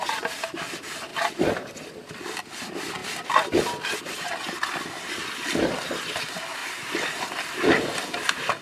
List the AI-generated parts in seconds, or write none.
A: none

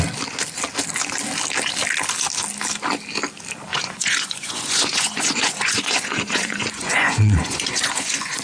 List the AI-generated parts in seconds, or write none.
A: 3.7-8.4 (vocoder, Vocos)

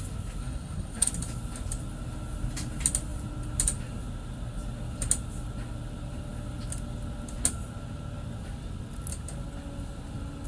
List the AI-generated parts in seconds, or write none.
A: 0.4-1.1 (codec, SNAC)

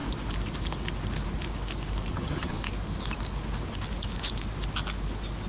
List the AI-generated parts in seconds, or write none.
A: 2.1-2.6 (vocoder, HiFi-GAN)

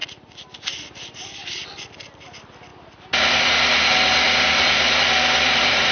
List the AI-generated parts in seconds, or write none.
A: none

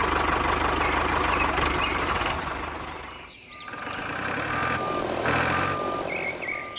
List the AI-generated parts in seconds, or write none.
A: 1.1-4.6 (vocoder, BigVGAN v2)